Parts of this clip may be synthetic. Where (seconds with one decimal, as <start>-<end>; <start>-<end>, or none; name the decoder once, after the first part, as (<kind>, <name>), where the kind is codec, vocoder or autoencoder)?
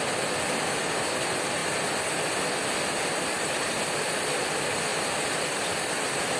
none